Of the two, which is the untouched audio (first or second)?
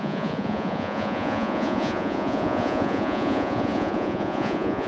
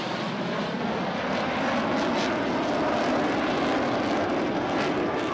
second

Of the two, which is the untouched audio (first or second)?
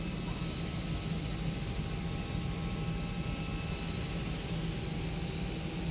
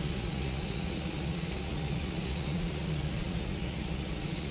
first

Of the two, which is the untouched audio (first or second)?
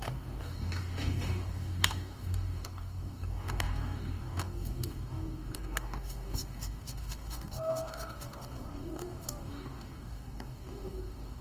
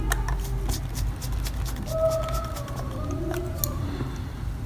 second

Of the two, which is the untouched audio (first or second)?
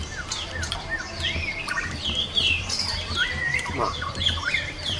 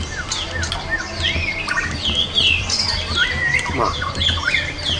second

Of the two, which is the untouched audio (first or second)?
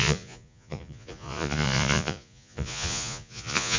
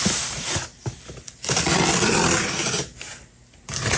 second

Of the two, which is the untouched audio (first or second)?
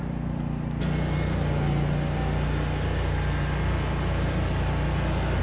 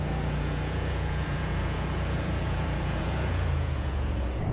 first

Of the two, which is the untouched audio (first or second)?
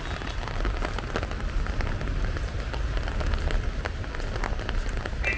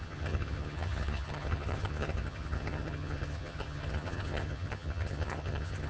first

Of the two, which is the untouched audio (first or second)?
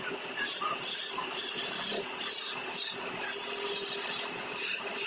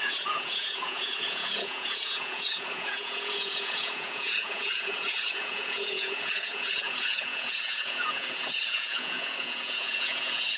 first